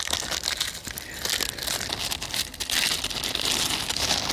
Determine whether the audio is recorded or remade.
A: recorded